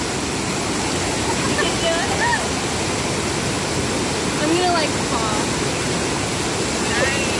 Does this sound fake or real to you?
real